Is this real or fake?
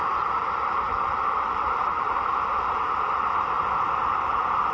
real